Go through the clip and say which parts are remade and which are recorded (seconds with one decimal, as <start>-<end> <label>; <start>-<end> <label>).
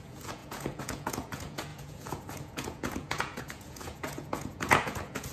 0.0-5.3 remade